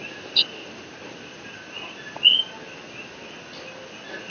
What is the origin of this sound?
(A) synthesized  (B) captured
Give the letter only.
B